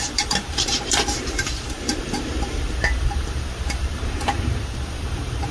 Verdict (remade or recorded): remade